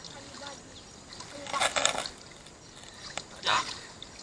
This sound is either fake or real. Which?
real